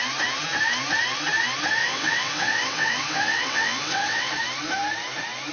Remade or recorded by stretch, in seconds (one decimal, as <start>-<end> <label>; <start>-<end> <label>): 0.0-1.8 recorded; 1.8-4.3 remade; 4.3-5.5 recorded